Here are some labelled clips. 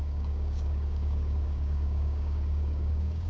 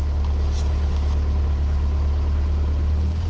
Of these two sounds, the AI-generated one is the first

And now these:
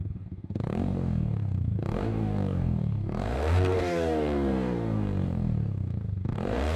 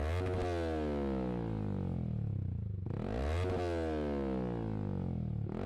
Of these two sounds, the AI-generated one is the first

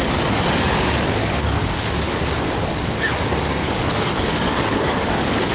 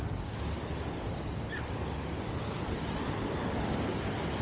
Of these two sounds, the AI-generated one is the first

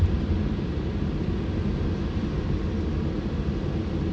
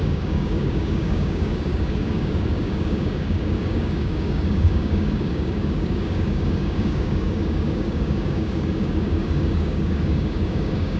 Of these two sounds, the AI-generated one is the second